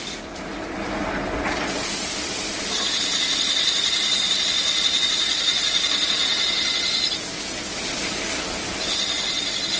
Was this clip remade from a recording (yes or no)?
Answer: no